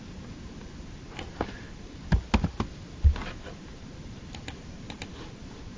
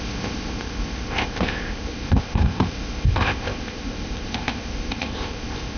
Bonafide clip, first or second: first